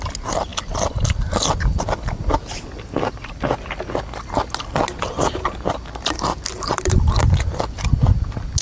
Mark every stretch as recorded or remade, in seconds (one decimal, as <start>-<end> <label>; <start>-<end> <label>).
0.0-8.6 recorded